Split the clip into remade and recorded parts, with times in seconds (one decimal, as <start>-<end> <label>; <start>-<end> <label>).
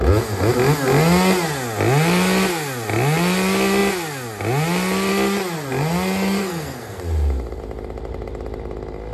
0.0-6.4 recorded; 6.4-7.0 remade; 7.0-9.1 recorded